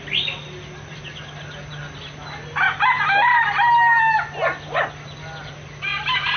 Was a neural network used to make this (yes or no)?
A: no